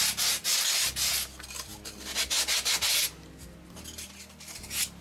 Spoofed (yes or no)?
no